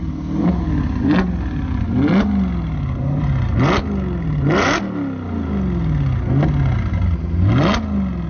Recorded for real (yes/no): yes